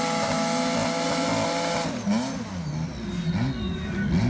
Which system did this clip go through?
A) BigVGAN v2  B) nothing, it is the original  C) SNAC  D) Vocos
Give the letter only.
B